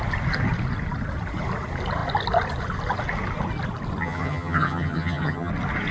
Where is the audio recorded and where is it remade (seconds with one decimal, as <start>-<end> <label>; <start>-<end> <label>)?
0.0-4.0 recorded; 4.0-5.5 remade; 5.5-5.9 recorded